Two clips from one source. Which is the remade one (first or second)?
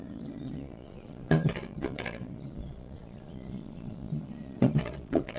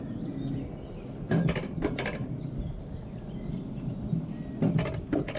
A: first